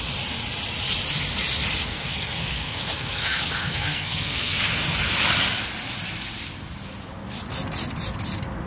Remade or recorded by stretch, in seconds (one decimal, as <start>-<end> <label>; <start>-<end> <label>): 0.0-1.9 recorded; 1.9-4.6 remade; 4.6-8.7 recorded